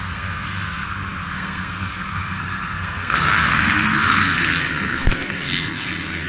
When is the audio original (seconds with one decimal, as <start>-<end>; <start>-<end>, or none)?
none